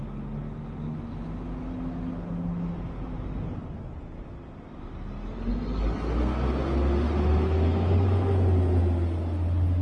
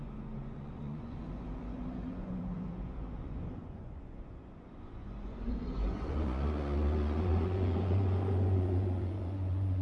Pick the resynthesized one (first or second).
second